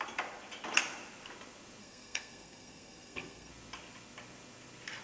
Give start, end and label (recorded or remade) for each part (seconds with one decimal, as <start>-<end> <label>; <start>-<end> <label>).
0.0-1.8 recorded; 1.8-3.5 remade; 3.5-5.0 recorded